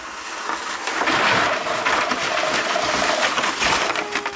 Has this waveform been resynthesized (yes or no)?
no